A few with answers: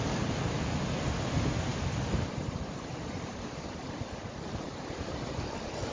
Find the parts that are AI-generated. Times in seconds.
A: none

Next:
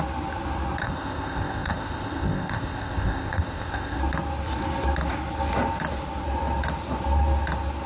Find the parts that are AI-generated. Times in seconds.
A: 0.8-4.0 (codec, ZipCodec)